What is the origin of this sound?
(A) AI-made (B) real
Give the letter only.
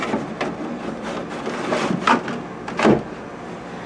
B